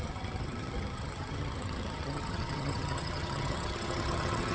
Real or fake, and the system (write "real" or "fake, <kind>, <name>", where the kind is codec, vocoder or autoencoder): fake, vocoder, HiFi-GAN